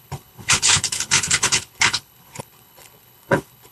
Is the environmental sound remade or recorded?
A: remade